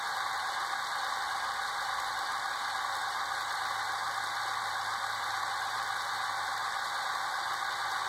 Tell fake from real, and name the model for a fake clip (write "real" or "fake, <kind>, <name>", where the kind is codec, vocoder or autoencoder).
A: real